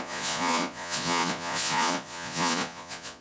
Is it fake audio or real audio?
fake